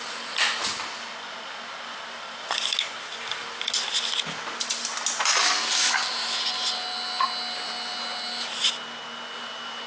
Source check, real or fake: real